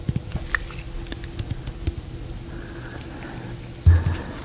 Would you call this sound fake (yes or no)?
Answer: no